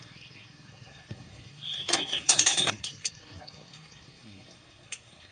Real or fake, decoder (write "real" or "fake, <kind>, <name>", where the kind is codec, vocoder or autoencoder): fake, codec, SNAC